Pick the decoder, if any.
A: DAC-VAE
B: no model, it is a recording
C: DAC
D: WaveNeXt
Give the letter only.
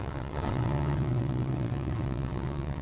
D